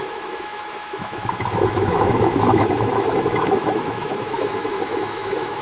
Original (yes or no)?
no